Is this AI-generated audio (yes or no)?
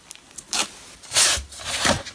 no